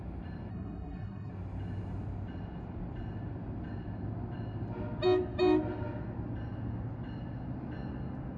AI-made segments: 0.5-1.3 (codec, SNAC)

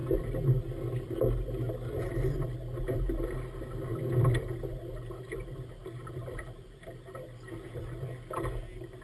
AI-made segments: none

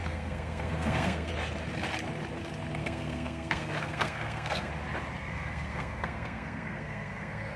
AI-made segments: 0.0-1.3 (codec, SNAC); 2.8-4.7; 5.2-7.6

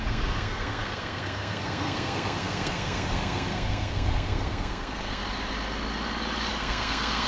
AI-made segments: 0.0-5.2 (codec, SNAC); 6.5-7.3

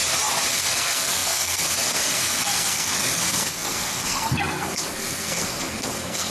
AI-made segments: 0.5-6.3 (codec, SNAC)

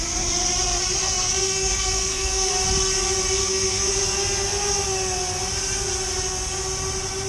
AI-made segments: 1.0-2.5 (codec, SNAC); 3.4-3.9

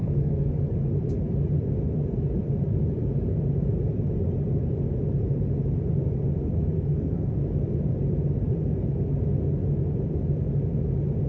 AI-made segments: 0.0-0.7 (codec, SNAC); 6.5-7.3

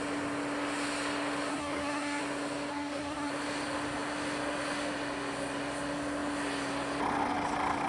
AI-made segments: 1.5-2.2 (codec, SNAC); 2.7-3.3